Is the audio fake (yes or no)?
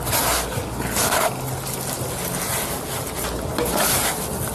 no